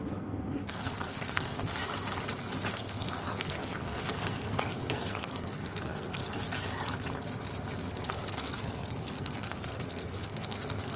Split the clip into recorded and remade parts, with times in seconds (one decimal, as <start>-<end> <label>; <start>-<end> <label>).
0.0-1.7 remade; 1.7-2.7 recorded; 2.7-6.2 remade; 6.2-7.9 recorded; 7.9-11.0 remade